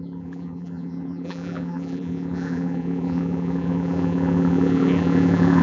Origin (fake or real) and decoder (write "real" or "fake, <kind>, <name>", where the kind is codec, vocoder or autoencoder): fake, vocoder, BigVGAN v2